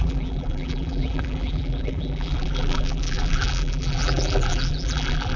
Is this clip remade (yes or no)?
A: yes